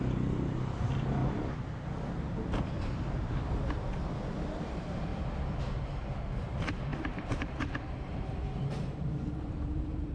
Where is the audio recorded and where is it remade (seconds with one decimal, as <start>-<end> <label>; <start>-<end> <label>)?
0.0-1.2 remade; 1.2-4.6 recorded; 4.6-5.1 remade; 5.1-6.1 recorded; 6.1-10.1 remade